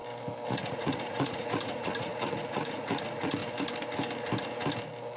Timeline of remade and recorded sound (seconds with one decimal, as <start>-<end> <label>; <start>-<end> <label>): 0.0-0.5 recorded; 0.5-3.4 remade; 3.4-5.2 recorded